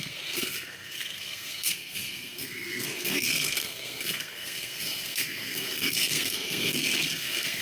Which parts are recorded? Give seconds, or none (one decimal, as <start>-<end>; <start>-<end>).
none